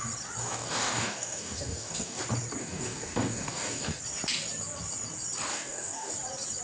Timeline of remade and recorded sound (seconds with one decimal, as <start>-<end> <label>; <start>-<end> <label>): 0.0-0.4 recorded; 0.4-2.2 remade; 2.2-2.6 recorded; 2.6-4.0 remade; 4.0-5.5 recorded; 5.5-6.1 remade; 6.1-6.6 recorded